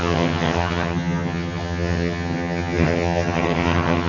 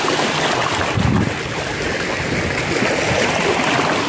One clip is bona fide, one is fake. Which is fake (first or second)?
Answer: first